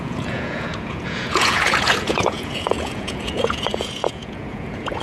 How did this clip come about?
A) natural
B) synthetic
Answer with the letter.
B